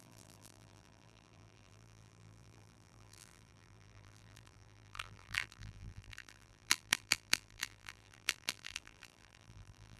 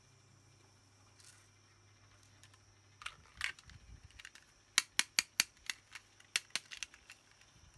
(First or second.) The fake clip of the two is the first